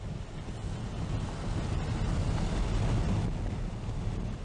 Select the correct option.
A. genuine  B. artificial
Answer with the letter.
A